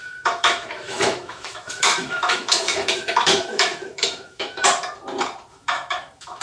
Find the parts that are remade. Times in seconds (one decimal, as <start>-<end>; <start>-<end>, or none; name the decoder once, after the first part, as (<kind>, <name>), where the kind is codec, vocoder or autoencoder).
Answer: 0.0-4.8 (autoencoder, DAC-VAE); 5.5-6.4